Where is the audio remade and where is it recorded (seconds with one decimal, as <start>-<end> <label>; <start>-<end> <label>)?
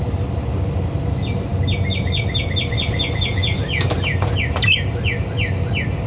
0.0-6.1 recorded